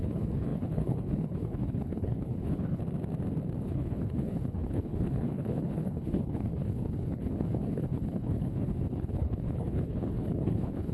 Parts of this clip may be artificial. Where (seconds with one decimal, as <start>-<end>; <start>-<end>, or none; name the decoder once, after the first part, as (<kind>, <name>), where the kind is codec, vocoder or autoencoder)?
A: 0.0-2.8 (codec, HILCodec); 3.6-10.9